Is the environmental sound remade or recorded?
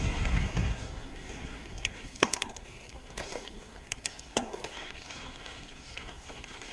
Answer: remade